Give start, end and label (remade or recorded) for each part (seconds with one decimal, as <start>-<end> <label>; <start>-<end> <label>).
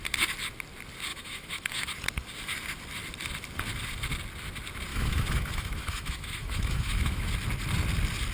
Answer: 0.0-1.1 recorded; 1.1-1.9 remade; 1.9-4.9 recorded; 4.9-7.3 remade; 7.3-8.3 recorded